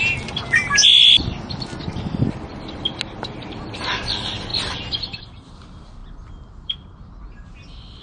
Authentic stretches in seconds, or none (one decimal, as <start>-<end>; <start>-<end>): 0.0-8.0